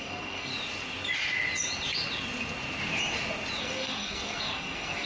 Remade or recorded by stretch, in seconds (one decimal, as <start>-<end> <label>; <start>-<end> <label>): 0.0-0.5 remade; 0.5-3.6 recorded; 3.6-5.1 remade